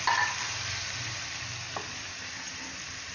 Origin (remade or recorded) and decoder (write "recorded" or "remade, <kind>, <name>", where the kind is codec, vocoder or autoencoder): recorded